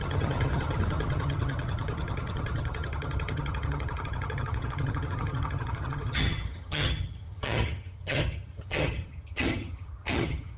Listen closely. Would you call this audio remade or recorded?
remade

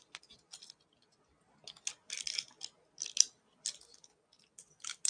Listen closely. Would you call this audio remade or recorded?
recorded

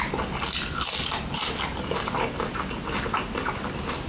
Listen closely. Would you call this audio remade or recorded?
recorded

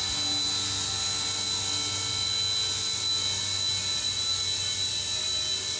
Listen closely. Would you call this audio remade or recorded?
recorded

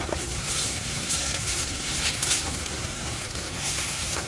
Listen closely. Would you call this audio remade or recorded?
remade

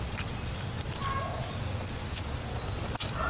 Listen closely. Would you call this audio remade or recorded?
recorded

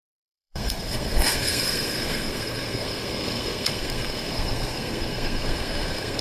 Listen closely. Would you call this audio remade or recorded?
remade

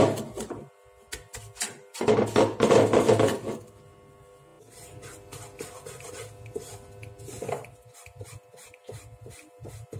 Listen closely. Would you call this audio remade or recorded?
recorded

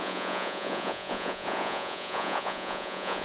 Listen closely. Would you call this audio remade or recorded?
remade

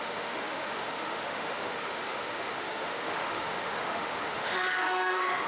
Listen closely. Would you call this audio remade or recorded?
remade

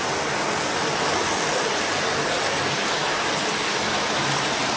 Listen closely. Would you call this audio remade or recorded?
recorded